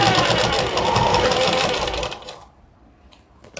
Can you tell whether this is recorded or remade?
recorded